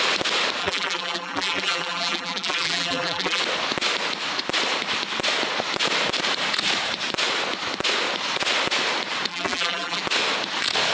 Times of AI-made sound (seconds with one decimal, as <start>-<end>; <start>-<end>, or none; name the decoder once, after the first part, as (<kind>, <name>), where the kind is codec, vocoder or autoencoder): 0.6-3.4 (vocoder, BigVGAN v2); 9.3-10.0